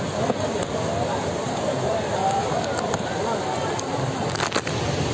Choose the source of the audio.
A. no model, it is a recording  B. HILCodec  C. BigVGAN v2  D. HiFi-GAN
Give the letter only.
A